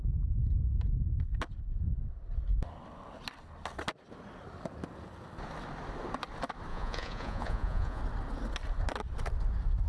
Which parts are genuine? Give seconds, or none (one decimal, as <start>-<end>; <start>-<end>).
0.0-6.7; 8.0-9.9